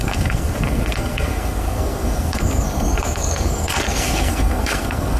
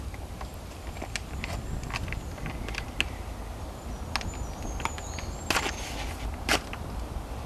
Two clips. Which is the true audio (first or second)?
second